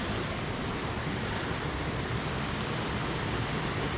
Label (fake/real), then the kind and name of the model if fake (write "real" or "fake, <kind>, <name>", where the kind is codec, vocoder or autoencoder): real